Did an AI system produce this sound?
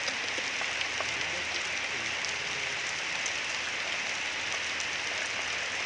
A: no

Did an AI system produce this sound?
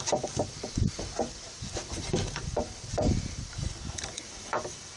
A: yes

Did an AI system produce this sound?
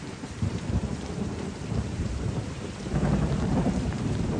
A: yes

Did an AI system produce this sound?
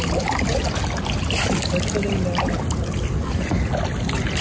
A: no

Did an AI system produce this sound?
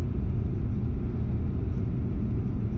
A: no